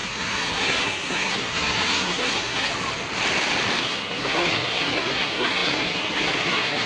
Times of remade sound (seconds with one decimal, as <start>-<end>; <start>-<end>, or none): 0.0-2.7; 3.8-6.9